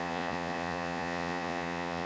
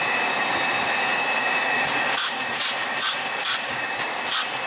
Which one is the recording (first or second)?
second